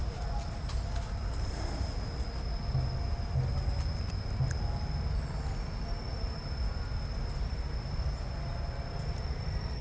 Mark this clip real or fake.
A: real